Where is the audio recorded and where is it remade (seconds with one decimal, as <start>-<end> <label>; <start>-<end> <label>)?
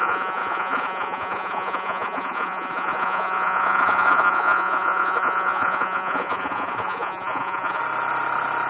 0.0-7.8 remade; 7.8-8.7 recorded